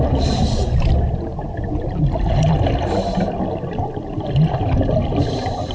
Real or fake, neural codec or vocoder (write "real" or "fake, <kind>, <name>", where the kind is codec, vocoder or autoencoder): real